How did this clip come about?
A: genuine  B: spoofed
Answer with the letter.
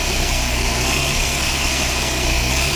B